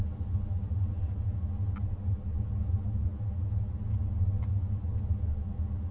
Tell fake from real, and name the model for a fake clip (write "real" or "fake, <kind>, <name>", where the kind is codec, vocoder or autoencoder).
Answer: real